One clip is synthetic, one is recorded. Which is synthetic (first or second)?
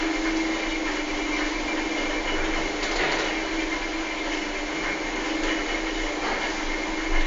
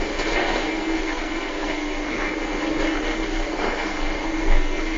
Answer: second